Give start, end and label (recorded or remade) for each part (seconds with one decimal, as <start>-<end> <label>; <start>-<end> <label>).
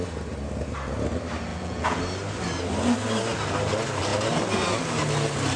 0.0-1.5 recorded; 1.5-2.0 remade; 2.0-5.6 recorded